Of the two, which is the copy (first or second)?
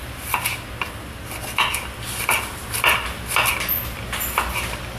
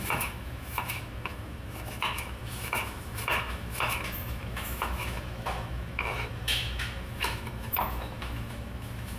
second